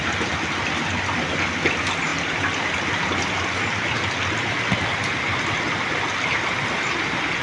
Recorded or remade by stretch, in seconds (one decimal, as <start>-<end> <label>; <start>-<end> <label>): 0.0-7.4 recorded